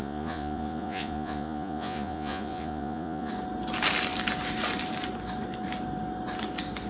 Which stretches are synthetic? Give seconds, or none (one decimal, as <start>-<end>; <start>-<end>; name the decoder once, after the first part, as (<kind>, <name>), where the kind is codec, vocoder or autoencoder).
0.0-3.3 (vocoder, Vocos)

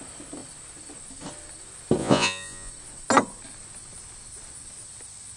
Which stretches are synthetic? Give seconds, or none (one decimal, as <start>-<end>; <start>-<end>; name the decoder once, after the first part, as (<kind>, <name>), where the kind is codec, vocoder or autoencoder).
2.0-2.7 (vocoder, Vocos)

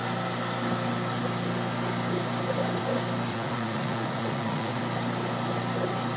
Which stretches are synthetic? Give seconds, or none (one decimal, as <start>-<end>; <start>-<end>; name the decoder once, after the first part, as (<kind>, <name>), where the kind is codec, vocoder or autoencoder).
3.3-4.8 (vocoder, Vocos)

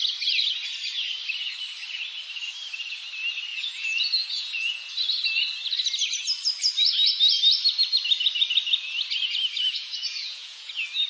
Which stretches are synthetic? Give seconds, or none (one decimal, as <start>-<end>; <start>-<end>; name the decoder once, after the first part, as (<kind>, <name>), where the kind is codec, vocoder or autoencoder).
3.5-4.9 (vocoder, Vocos); 9.7-10.7